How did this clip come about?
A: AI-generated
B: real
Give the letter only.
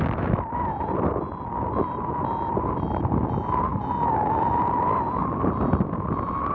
B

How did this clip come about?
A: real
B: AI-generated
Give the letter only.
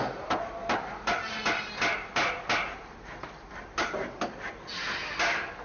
A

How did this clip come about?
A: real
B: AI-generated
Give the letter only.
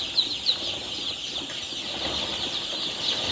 A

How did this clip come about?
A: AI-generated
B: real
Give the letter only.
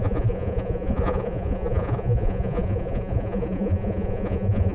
A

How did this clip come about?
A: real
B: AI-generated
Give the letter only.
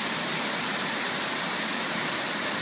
A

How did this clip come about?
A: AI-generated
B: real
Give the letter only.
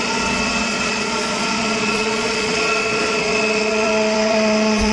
A